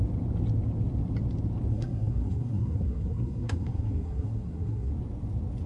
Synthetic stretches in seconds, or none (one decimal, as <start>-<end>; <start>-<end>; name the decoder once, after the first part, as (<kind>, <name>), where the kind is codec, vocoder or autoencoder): 1.7-4.9 (codec, SNAC)